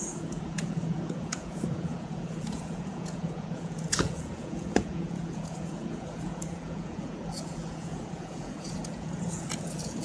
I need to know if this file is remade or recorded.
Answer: remade